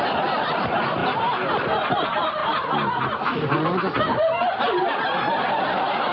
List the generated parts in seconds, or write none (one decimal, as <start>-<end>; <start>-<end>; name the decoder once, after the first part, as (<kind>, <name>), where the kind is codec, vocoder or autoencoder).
none